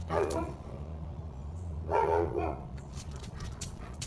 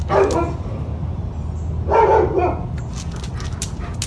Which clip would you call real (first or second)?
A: second